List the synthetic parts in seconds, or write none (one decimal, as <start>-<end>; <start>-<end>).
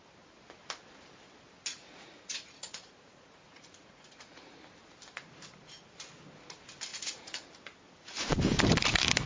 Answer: 1.7-4.6; 6.9-7.5